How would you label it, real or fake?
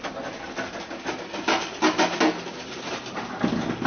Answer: real